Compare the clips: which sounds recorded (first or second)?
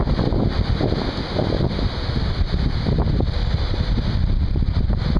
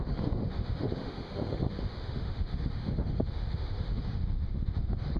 first